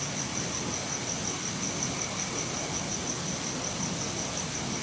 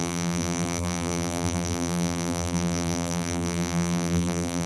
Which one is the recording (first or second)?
first